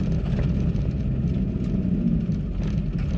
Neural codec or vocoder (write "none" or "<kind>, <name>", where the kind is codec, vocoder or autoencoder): none